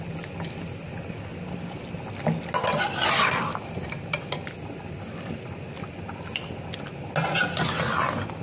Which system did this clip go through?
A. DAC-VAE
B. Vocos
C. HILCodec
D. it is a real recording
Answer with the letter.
D